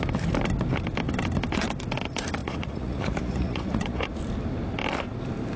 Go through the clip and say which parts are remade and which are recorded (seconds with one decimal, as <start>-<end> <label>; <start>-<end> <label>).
0.0-2.4 recorded; 2.4-4.2 remade; 4.2-5.6 recorded